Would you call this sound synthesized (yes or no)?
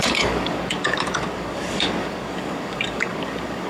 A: yes